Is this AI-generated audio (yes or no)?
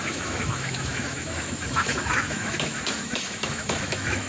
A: yes